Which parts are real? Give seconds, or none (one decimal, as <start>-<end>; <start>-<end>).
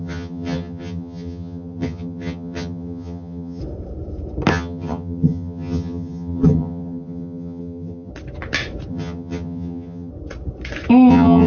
3.6-4.5; 8.1-8.9; 10.1-11.1